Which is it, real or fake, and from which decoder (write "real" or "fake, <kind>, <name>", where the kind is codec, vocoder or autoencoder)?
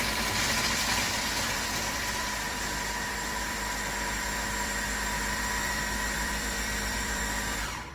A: fake, vocoder, BigVGAN v2